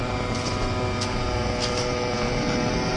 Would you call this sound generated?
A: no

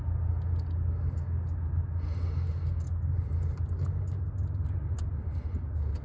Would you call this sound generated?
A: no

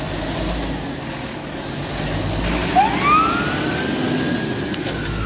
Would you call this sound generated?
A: no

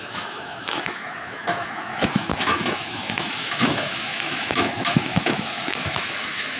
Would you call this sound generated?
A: yes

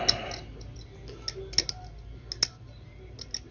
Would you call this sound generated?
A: no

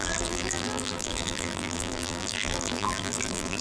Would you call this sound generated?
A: yes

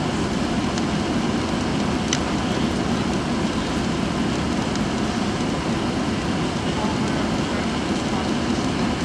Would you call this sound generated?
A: no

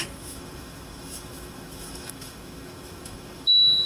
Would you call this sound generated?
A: yes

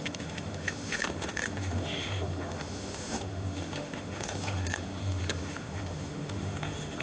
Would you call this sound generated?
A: yes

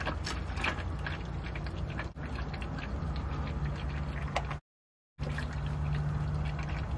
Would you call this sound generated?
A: no